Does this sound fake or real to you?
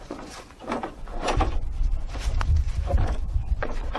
fake